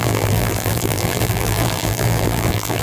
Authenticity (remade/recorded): remade